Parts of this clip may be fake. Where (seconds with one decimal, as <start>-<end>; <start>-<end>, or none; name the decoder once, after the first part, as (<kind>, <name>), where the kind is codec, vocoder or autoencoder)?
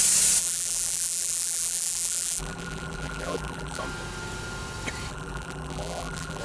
0.4-3.8 (vocoder, BigVGAN v2); 5.1-6.4